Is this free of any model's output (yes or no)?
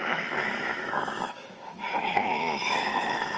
no